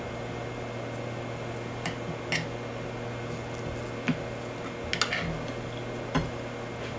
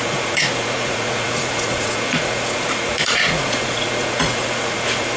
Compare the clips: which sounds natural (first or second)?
first